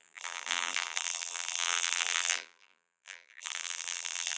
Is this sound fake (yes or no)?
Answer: yes